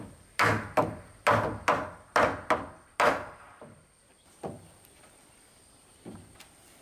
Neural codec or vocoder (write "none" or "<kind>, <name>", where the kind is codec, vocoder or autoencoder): none